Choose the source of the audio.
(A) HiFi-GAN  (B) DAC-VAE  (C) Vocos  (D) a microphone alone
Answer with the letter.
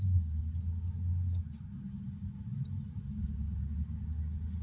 D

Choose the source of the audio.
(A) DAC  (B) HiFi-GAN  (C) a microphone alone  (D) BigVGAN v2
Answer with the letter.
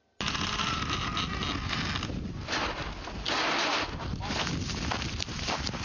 C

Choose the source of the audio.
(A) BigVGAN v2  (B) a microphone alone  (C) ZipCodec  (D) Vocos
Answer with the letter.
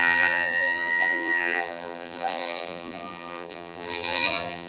A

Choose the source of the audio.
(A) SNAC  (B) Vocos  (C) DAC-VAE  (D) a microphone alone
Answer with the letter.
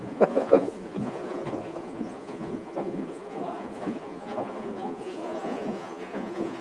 B